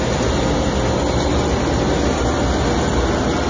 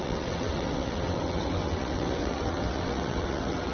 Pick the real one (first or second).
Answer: first